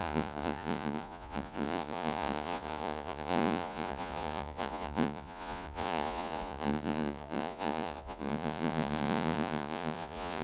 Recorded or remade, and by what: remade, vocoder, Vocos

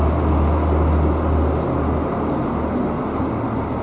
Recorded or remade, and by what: recorded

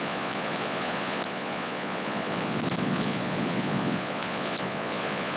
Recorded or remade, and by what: remade, vocoder, Vocos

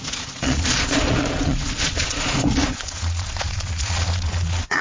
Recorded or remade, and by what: remade, vocoder, Vocos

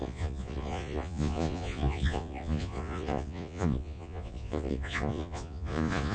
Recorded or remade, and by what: remade, vocoder, Vocos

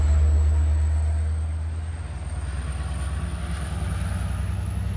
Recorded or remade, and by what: recorded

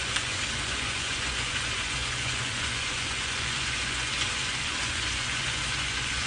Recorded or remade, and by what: remade, vocoder, Vocos